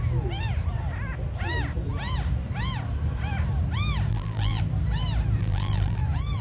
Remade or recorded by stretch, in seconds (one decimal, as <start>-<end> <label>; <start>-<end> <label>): 0.0-4.1 recorded; 4.1-4.6 remade; 4.6-5.4 recorded; 5.4-6.0 remade; 6.0-6.4 recorded